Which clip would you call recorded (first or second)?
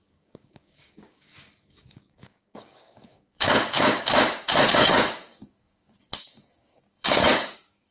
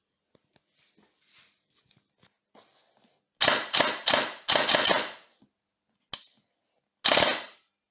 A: second